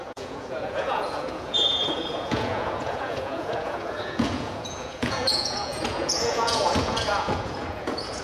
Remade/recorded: remade